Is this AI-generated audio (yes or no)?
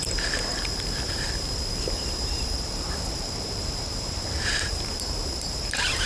yes